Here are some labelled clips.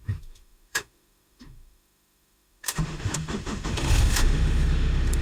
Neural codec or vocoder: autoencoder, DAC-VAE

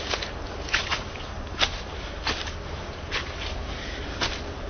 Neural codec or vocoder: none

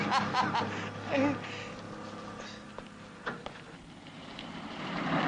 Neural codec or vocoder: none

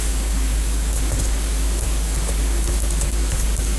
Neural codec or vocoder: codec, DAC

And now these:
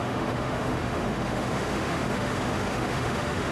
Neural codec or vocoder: autoencoder, DAC-VAE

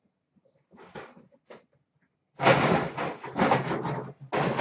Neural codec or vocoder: none